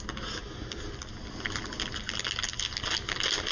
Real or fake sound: real